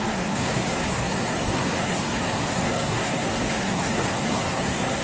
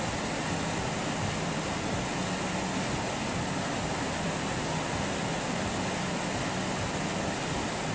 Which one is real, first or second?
second